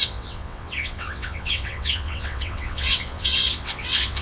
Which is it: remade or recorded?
remade